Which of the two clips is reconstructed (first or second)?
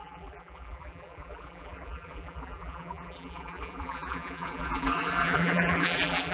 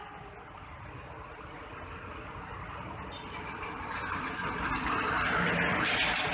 first